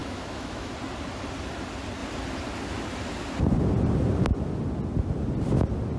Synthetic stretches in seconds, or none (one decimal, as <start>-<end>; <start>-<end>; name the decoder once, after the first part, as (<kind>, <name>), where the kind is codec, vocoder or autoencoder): 0.0-0.7 (autoencoder, DAC-VAE)